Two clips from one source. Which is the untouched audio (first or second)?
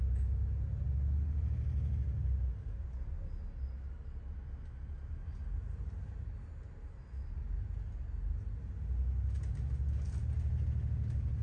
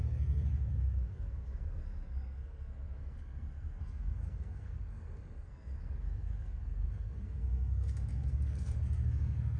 first